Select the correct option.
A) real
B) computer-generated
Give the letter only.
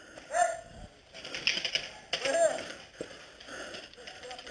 A